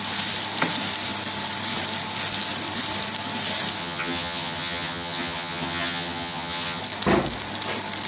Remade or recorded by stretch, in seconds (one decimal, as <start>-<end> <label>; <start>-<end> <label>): 0.0-3.8 recorded; 3.8-6.8 remade; 6.8-8.1 recorded